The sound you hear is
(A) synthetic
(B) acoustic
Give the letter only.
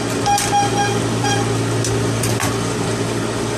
B